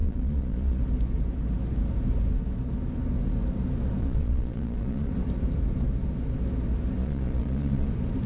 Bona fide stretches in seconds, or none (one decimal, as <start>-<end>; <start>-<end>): 0.8-4.0; 5.1-7.0; 7.9-8.3